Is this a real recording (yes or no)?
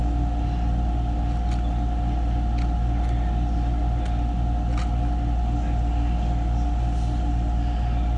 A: yes